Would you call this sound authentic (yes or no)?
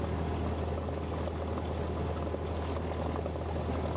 yes